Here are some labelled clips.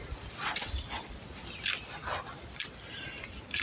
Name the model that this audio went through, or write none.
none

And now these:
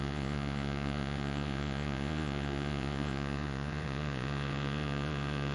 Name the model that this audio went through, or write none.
vocoder, Vocos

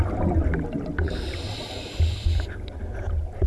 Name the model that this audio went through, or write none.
none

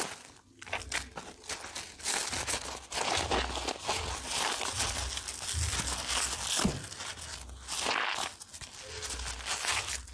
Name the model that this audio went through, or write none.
none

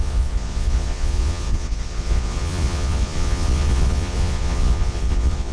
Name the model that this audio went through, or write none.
vocoder, Vocos